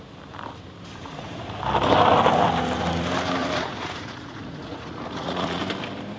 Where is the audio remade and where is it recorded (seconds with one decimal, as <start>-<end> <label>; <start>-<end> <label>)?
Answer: 0.0-1.0 recorded; 1.0-1.6 remade; 1.6-3.4 recorded; 3.4-5.6 remade; 5.6-6.2 recorded